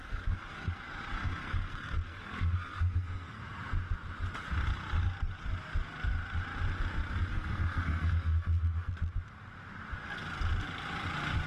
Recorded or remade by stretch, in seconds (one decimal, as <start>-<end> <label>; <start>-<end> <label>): 0.0-3.4 remade; 3.4-7.3 recorded; 7.3-8.9 remade; 8.9-11.5 recorded